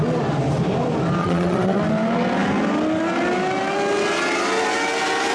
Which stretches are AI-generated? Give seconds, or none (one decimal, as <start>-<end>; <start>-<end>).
1.2-1.8